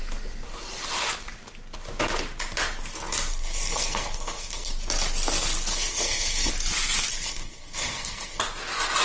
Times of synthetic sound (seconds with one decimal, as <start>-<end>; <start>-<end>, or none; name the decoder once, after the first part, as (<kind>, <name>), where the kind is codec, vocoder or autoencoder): 3.3-4.7 (codec, SNAC); 5.7-6.5; 7.1-8.4